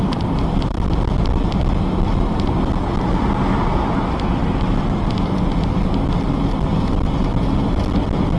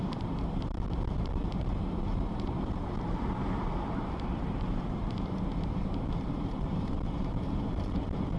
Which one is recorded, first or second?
first